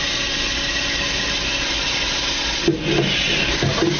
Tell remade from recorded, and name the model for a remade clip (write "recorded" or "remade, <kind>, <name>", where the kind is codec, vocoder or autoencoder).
recorded